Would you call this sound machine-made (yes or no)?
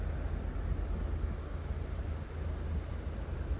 no